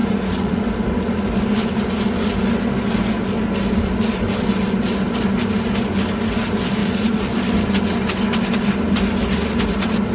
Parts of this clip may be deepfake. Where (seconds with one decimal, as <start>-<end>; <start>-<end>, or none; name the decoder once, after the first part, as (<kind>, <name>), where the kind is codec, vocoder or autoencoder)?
0.0-0.6 (vocoder, Vocos); 6.8-7.3